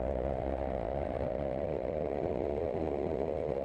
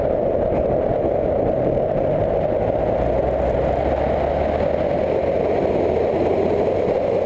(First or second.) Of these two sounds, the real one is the second